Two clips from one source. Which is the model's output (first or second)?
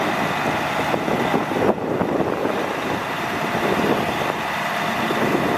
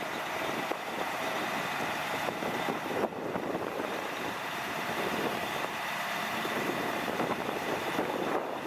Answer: second